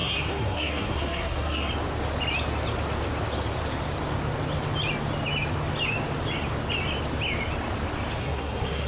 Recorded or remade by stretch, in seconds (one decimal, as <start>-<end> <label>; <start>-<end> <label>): 0.0-1.7 remade; 1.7-8.2 recorded; 8.2-8.9 remade